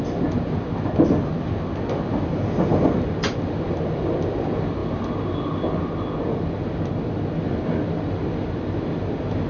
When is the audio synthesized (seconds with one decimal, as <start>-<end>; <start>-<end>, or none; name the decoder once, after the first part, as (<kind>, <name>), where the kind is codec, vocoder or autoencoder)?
none